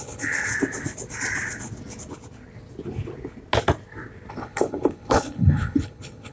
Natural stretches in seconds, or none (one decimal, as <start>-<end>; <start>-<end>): 0.5-4.3